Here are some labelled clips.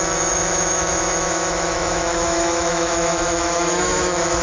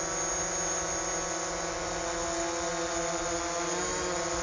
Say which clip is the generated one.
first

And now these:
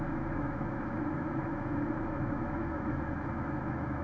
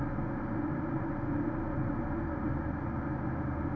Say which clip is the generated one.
first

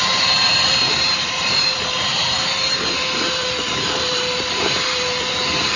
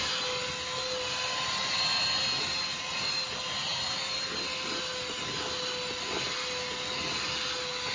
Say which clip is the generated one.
first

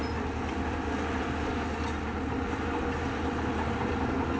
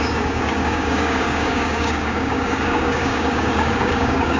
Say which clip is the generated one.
second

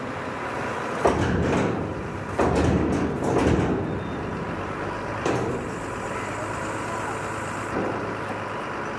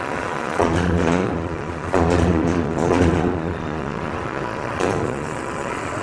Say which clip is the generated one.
second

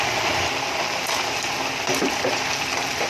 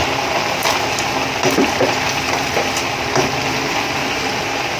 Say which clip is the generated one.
first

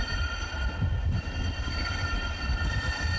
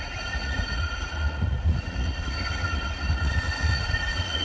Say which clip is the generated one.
second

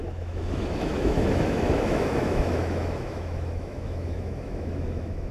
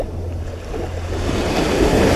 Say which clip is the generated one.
first